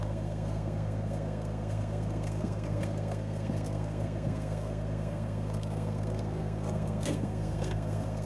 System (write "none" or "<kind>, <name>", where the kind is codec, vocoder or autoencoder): codec, SNAC